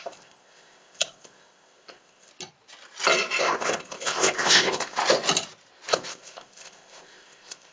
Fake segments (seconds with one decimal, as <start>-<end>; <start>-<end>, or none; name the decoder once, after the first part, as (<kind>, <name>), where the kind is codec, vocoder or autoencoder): 0.0-2.3 (codec, ZipCodec); 3.4-5.0; 5.9-7.7

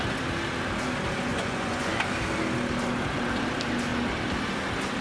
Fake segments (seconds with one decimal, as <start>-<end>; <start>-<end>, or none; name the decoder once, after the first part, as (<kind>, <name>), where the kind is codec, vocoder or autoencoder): 1.3-2.0 (vocoder, Vocos)

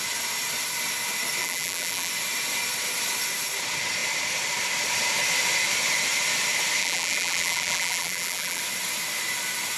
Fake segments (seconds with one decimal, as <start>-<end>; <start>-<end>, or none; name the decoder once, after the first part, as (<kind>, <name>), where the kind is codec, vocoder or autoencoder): 1.4-2.1 (vocoder, BigVGAN v2); 6.8-8.6

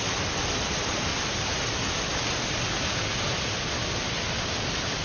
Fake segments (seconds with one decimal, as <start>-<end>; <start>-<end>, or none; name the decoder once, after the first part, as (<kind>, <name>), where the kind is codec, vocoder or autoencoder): none

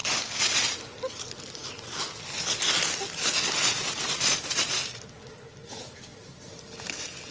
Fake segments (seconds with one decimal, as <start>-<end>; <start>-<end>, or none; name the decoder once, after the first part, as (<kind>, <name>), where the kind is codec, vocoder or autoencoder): none

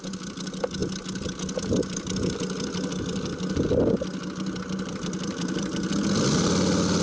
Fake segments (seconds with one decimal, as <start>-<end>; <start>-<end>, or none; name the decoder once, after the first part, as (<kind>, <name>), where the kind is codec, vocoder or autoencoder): none

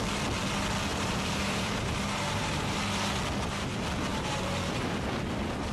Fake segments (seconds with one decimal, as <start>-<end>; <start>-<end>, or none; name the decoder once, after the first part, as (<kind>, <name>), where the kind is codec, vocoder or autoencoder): 0.9-2.8 (vocoder, BigVGAN v2); 4.1-4.8

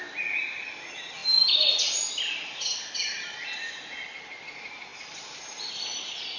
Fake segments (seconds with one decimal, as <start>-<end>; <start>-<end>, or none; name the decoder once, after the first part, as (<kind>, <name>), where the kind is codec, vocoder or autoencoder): none